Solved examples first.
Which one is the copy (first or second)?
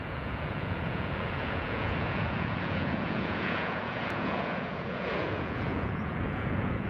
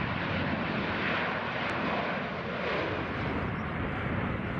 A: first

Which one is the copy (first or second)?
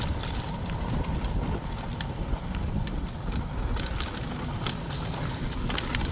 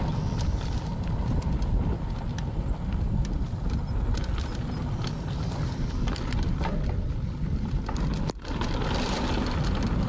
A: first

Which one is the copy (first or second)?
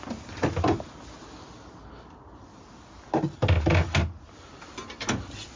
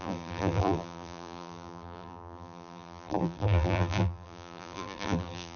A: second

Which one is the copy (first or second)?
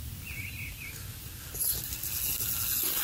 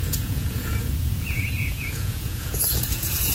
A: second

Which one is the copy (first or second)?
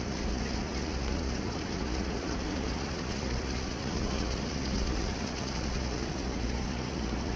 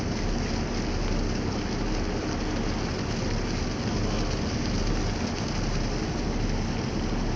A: first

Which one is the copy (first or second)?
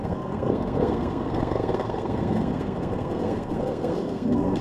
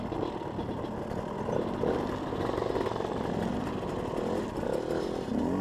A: first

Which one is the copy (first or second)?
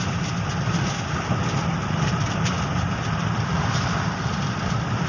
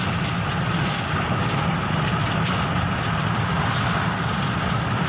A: first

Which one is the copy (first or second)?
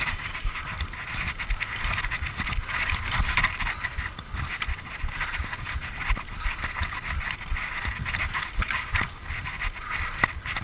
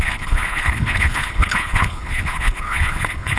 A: second